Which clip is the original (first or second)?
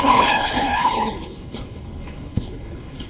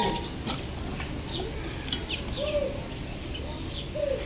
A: second